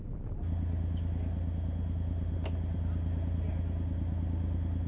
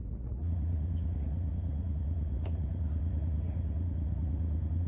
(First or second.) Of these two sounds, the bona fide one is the first